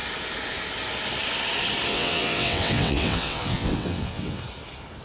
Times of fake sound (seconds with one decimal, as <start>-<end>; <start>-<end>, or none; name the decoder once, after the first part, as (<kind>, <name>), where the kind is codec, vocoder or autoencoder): 1.9-4.4 (vocoder, WaveNeXt)